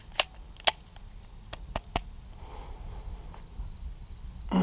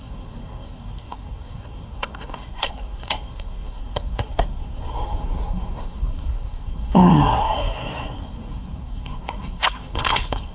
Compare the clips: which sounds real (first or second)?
first